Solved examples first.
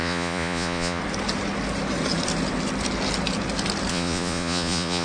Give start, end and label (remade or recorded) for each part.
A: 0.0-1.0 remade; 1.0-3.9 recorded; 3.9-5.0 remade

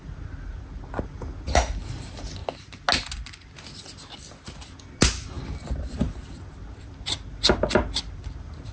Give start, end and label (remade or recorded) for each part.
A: 0.0-8.7 recorded

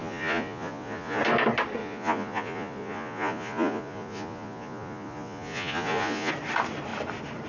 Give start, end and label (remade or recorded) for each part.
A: 0.0-1.2 remade; 1.2-1.8 recorded; 1.8-6.3 remade; 6.3-7.5 recorded

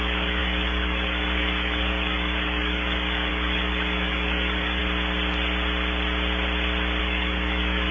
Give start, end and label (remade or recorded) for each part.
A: 0.0-4.8 remade; 4.8-7.0 recorded; 7.0-7.9 remade

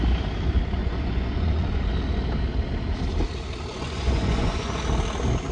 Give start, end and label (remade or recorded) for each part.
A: 0.0-0.8 recorded; 0.8-1.9 remade; 1.9-3.7 recorded; 3.7-4.8 remade; 4.8-5.5 recorded